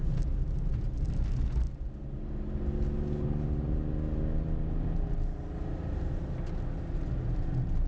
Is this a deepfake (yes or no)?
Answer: no